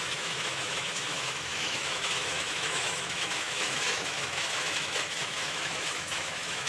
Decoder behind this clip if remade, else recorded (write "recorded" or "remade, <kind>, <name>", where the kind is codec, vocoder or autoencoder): remade, autoencoder, DAC-VAE